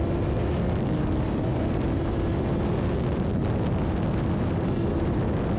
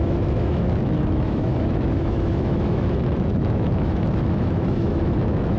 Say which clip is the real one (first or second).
first